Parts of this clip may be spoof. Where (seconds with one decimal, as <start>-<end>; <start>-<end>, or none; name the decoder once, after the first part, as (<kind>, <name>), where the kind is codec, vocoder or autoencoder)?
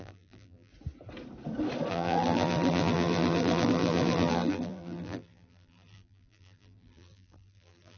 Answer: 0.0-0.7 (vocoder, BigVGAN v2); 1.9-8.0